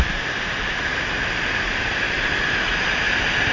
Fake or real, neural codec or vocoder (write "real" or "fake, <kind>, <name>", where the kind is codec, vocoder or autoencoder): real